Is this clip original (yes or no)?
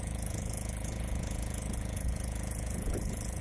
no